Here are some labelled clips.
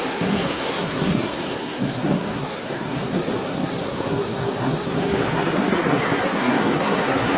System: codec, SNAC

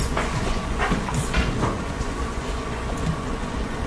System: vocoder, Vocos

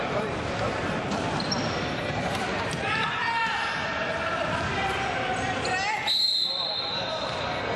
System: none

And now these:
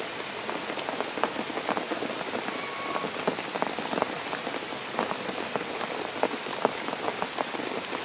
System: none